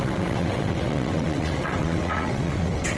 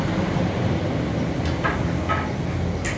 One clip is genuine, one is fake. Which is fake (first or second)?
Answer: first